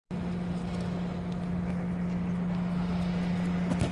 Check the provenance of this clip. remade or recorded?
recorded